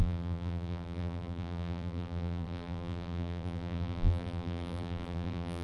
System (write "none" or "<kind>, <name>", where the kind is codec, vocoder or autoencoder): vocoder, BigVGAN v2